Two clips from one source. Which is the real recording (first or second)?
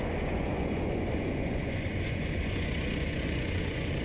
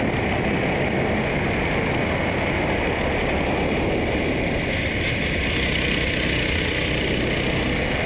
second